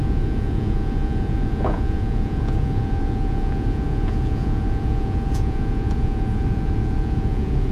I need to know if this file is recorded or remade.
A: remade